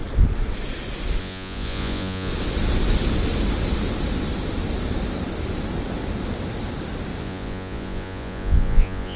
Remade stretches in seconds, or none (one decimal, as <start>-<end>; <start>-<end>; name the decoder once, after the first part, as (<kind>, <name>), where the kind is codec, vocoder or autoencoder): 1.2-2.3 (vocoder, Vocos); 7.2-9.2